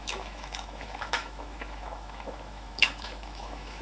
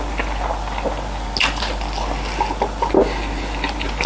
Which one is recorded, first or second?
second